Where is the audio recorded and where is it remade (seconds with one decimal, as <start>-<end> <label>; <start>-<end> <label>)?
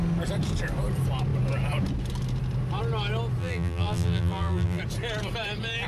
0.0-3.4 recorded; 3.4-4.8 remade; 4.8-5.9 recorded